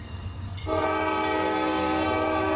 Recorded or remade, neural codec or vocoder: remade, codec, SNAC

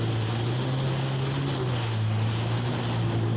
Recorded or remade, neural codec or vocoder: recorded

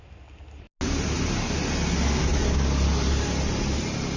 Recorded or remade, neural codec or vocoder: recorded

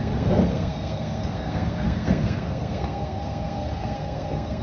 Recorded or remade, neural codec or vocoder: remade, codec, SNAC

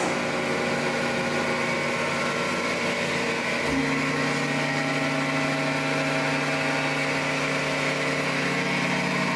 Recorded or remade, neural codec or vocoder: recorded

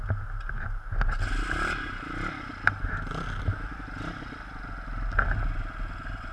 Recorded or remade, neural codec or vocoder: recorded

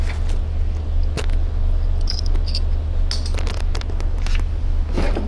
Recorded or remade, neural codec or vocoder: recorded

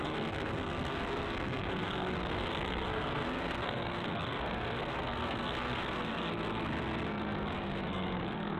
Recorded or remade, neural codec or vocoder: remade, codec, SNAC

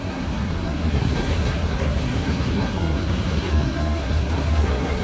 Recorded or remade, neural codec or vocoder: remade, codec, SNAC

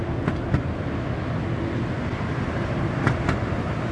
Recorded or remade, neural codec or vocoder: recorded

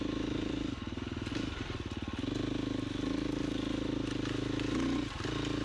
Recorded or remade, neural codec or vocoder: recorded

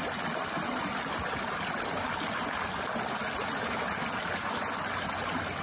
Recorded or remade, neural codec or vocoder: recorded